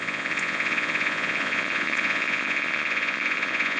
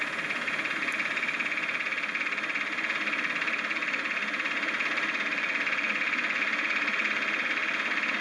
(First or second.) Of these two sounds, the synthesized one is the first